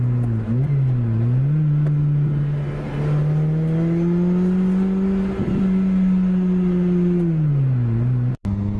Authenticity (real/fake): real